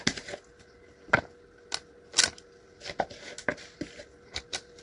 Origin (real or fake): real